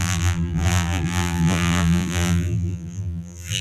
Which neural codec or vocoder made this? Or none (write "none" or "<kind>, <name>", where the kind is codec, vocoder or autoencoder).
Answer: vocoder, BigVGAN v2